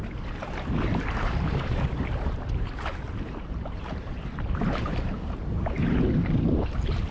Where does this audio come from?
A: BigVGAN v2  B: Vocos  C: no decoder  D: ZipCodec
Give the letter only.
A